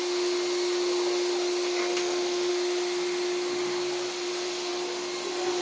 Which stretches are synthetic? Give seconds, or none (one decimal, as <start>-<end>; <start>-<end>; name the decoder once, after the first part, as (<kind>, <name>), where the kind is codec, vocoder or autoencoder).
1.8-2.5 (autoencoder, DAC-VAE)